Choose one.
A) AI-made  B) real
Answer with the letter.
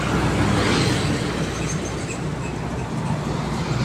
B